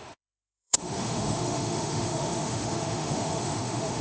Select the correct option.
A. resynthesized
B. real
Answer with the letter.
A